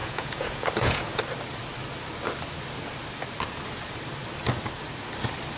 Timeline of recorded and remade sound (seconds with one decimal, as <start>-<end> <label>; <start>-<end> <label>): 0.0-1.2 remade; 1.2-5.6 recorded